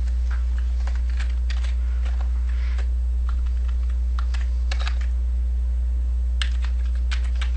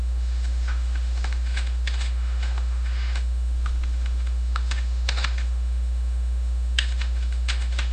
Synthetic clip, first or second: second